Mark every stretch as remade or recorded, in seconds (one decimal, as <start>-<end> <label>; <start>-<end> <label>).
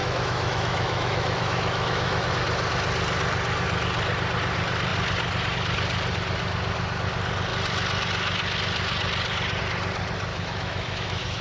0.0-2.3 remade; 2.3-10.3 recorded; 10.3-11.4 remade